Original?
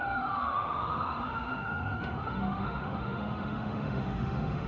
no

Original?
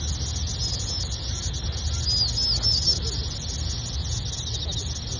yes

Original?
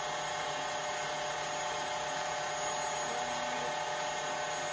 yes